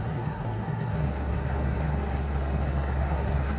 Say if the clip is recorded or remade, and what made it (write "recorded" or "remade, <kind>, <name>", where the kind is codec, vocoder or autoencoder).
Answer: remade, codec, SNAC